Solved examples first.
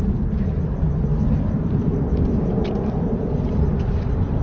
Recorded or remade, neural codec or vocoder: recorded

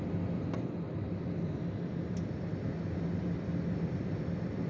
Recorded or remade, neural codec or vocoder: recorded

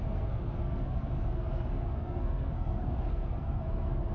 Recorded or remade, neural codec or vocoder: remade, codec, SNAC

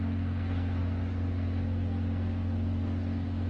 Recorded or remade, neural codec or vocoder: remade, codec, SNAC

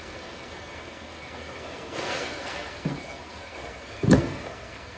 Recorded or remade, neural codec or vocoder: remade, codec, SNAC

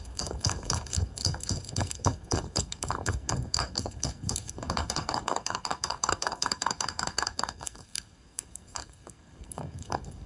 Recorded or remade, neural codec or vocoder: remade, codec, SNAC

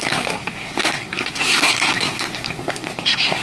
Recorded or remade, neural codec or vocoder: remade, codec, SNAC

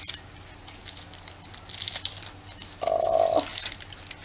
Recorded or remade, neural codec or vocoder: recorded